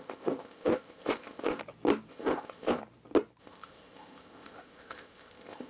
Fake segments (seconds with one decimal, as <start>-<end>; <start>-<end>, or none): 0.0-1.6; 2.1-2.8; 3.4-5.7